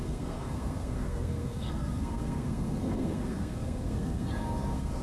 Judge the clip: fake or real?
fake